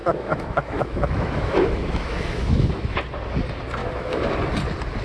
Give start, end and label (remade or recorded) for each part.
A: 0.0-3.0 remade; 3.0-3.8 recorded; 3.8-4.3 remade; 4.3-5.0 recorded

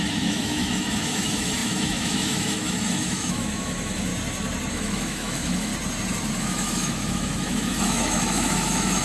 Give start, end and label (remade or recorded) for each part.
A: 0.0-4.1 remade; 4.1-4.7 recorded; 4.7-5.7 remade; 5.7-6.4 recorded; 6.4-9.0 remade

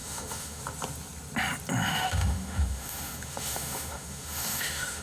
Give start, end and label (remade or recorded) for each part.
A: 0.0-0.6 remade; 0.6-1.9 recorded; 1.9-5.0 remade

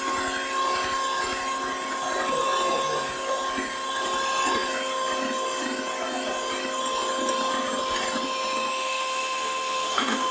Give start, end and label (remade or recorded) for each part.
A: 0.0-8.7 recorded; 8.7-10.3 remade

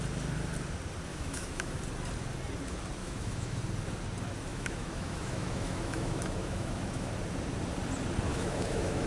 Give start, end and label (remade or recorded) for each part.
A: 0.0-1.1 recorded; 1.1-1.8 remade; 1.8-3.0 recorded; 3.0-3.6 remade; 3.6-4.5 recorded; 4.5-7.1 remade; 7.1-8.3 recorded; 8.3-9.1 remade

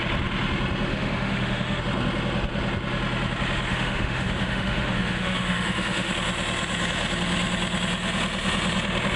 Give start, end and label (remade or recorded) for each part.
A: 0.0-0.9 recorded; 0.9-1.8 remade; 1.8-3.7 recorded; 3.7-6.1 remade; 6.1-9.2 recorded

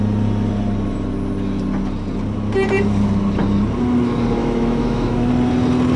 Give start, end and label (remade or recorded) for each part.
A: 0.0-4.4 recorded; 4.4-5.3 remade; 5.3-6.0 recorded